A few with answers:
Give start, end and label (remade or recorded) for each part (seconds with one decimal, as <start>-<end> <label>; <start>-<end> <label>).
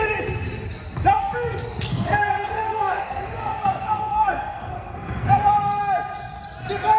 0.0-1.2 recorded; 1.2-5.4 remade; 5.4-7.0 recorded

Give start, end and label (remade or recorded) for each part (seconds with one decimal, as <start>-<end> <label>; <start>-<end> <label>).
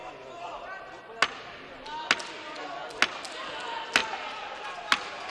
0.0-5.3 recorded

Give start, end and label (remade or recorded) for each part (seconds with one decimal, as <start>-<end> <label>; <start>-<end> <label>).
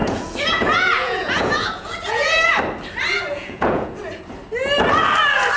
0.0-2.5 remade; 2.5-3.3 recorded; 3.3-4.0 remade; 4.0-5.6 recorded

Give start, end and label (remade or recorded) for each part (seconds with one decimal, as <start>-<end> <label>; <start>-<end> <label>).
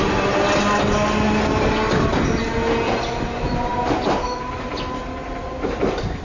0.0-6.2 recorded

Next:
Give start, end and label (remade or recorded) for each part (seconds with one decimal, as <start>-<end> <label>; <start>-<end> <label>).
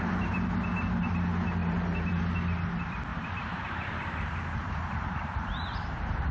0.0-1.6 recorded; 1.6-2.1 remade; 2.1-3.1 recorded; 3.1-6.3 remade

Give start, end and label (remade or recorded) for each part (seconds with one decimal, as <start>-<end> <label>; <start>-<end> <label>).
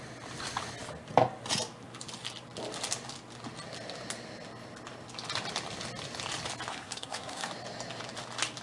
0.0-6.7 recorded; 6.7-7.5 remade; 7.5-8.6 recorded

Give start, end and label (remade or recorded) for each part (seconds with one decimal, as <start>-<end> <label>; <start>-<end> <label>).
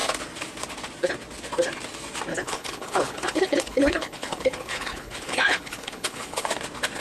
0.0-2.3 recorded; 2.3-6.5 remade; 6.5-7.0 recorded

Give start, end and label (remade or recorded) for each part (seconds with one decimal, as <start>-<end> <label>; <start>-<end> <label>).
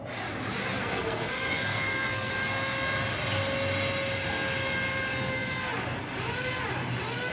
0.0-0.7 recorded; 0.7-2.3 remade; 2.3-7.3 recorded